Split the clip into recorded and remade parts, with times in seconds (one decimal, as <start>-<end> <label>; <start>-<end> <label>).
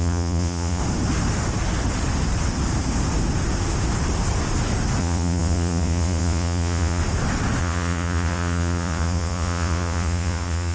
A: 0.0-0.8 remade; 0.8-5.0 recorded; 5.0-7.0 remade; 7.0-7.6 recorded; 7.6-10.7 remade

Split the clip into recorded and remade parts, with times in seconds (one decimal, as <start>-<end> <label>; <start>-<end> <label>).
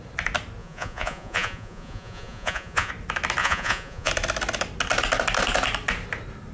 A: 0.0-0.6 recorded; 0.6-2.9 remade; 2.9-3.4 recorded; 3.4-4.1 remade; 4.1-6.5 recorded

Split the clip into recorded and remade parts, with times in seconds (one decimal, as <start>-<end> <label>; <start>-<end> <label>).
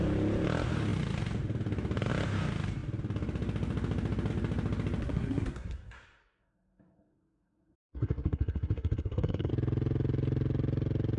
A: 0.0-5.0 recorded; 5.0-9.5 remade; 9.5-11.2 recorded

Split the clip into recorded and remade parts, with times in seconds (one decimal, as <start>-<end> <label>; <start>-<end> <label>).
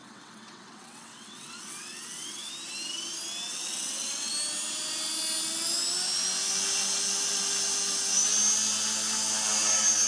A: 0.0-2.5 remade; 2.5-3.5 recorded; 3.5-4.3 remade; 4.3-10.1 recorded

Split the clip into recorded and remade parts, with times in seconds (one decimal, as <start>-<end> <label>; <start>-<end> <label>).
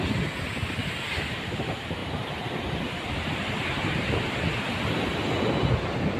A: 0.0-2.0 recorded; 2.0-4.6 remade; 4.6-6.2 recorded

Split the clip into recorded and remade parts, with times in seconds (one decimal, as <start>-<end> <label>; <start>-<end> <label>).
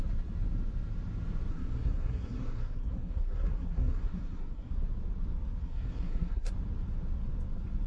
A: 0.0-1.5 recorded; 1.5-4.7 remade; 4.7-5.6 recorded; 5.6-6.5 remade; 6.5-7.9 recorded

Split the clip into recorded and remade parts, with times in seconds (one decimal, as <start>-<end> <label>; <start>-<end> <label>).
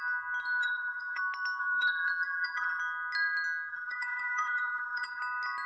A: 0.0-0.6 recorded; 0.6-1.2 remade; 1.2-1.6 recorded; 1.6-2.8 remade; 2.8-3.7 recorded; 3.7-5.2 remade; 5.2-5.7 recorded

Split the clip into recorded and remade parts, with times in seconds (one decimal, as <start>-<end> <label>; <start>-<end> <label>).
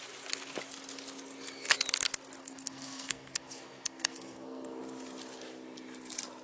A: 0.0-2.4 recorded; 2.4-4.8 remade; 4.8-6.4 recorded